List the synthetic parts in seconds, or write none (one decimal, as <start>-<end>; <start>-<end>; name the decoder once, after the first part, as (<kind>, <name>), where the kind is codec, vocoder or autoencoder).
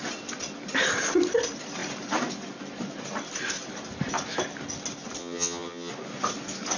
5.2-5.9 (vocoder, HiFi-GAN)